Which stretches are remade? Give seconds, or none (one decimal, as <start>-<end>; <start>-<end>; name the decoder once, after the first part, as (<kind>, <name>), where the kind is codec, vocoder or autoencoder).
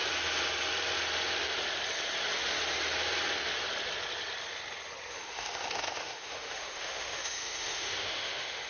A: 5.1-8.7 (autoencoder, DAC-VAE)